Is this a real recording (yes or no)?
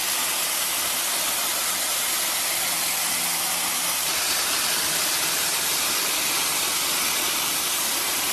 yes